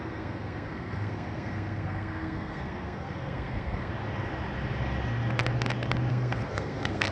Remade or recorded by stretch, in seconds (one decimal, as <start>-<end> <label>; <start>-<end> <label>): 0.0-3.9 remade; 3.9-6.1 recorded; 6.1-7.1 remade